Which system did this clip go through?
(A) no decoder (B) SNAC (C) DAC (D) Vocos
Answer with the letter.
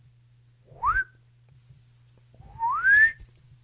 A